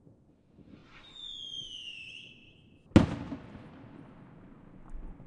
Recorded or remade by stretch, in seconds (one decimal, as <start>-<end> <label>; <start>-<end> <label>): 0.0-5.3 recorded